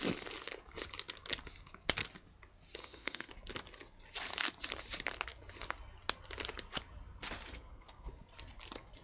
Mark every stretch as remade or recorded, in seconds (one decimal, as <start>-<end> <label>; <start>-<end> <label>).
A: 0.0-2.8 recorded; 2.8-3.3 remade; 3.3-7.5 recorded; 7.5-8.1 remade; 8.1-9.0 recorded